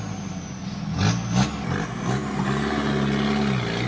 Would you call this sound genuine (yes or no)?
yes